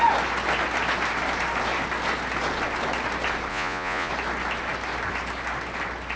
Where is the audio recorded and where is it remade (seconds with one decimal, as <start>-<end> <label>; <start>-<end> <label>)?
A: 0.0-3.5 recorded; 3.5-4.1 remade; 4.1-6.2 recorded

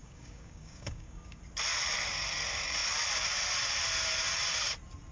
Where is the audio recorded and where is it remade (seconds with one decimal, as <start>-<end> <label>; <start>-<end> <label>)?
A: 0.0-1.4 remade; 1.4-5.1 recorded

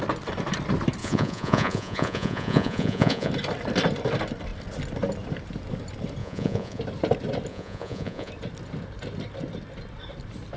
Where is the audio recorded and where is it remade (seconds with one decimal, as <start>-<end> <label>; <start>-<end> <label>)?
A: 0.0-1.0 recorded; 1.0-3.3 remade; 3.3-6.2 recorded; 6.2-6.8 remade; 6.8-7.5 recorded; 7.5-8.3 remade; 8.3-10.6 recorded

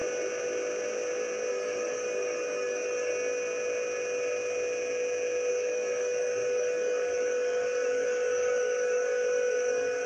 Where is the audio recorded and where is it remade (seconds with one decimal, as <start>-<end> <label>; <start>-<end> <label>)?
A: 0.0-1.5 recorded; 1.5-3.1 remade; 3.1-5.5 recorded; 5.5-10.1 remade

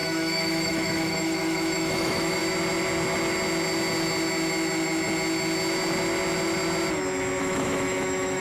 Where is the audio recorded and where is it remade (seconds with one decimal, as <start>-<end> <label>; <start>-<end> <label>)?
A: 0.0-2.4 remade; 2.4-7.4 recorded; 7.4-8.4 remade

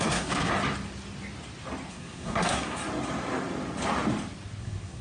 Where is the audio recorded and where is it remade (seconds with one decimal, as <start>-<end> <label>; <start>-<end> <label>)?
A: 0.0-0.5 remade; 0.5-1.9 recorded; 1.9-2.8 remade; 2.8-4.6 recorded; 4.6-5.0 remade

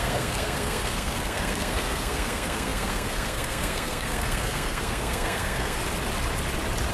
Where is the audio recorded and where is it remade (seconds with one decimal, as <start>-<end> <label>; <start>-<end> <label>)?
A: 0.0-5.8 remade; 5.8-6.9 recorded

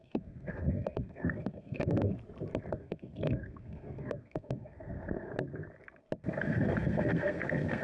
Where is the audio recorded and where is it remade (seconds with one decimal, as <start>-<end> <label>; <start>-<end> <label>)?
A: 0.0-2.1 remade; 2.1-2.7 recorded; 2.7-5.3 remade; 5.3-6.4 recorded; 6.4-7.8 remade